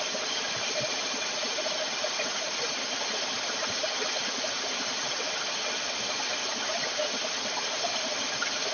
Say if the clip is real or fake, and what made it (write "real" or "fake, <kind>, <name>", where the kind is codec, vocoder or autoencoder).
real